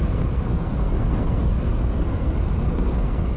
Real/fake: fake